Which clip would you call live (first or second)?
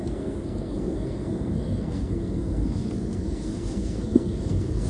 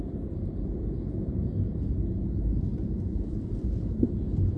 second